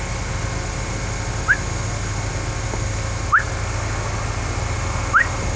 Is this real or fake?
real